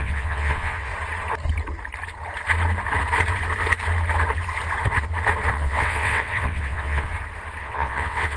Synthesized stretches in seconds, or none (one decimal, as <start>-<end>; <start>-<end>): 0.0-0.9; 5.5-7.1; 7.6-8.4